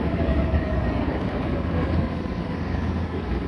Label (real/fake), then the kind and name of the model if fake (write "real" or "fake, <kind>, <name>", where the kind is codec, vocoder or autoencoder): fake, codec, DAC